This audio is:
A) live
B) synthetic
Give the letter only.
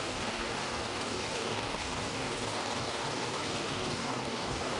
B